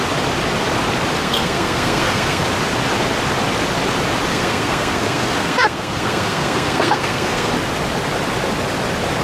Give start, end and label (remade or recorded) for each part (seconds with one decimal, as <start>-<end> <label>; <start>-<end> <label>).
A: 0.0-1.2 recorded; 1.2-2.4 remade; 2.4-4.3 recorded; 4.3-7.5 remade; 7.5-9.2 recorded